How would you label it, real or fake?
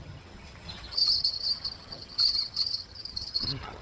fake